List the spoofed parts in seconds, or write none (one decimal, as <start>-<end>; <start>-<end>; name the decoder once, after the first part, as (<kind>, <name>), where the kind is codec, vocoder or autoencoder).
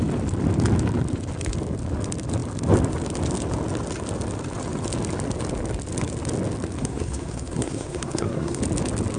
6.8-8.6 (codec, SNAC)